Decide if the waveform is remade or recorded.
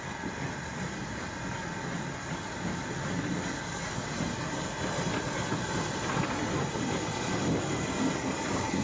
recorded